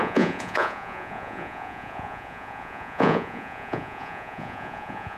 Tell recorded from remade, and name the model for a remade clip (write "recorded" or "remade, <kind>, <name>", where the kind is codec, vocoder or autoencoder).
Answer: remade, vocoder, Vocos